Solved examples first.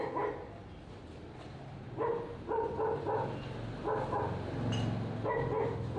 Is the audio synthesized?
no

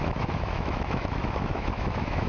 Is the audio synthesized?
yes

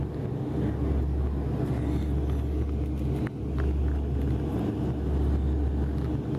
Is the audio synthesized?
no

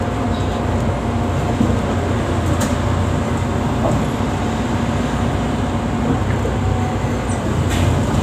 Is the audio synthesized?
no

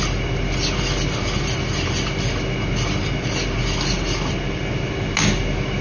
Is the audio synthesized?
no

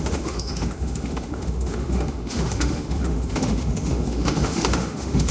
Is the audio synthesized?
yes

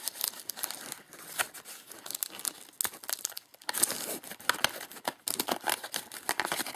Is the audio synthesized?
no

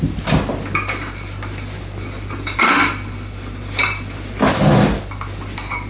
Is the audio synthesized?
no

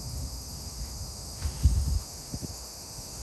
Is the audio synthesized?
yes